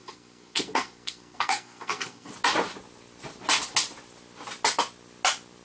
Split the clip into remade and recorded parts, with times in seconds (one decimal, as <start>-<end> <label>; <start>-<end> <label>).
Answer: 0.0-2.3 remade; 2.3-5.6 recorded